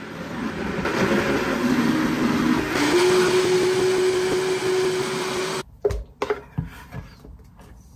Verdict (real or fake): real